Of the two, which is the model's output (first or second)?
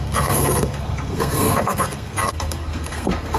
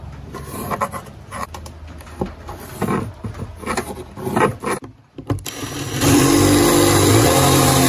first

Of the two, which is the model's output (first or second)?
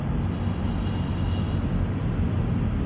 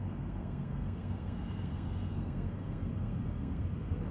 second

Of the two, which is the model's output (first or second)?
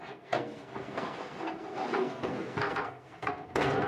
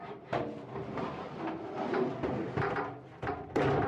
first